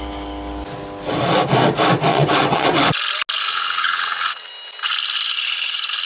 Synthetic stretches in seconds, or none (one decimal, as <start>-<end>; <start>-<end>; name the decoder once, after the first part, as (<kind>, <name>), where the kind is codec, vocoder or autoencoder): 2.1-2.9 (vocoder, WaveNeXt); 3.5-4.5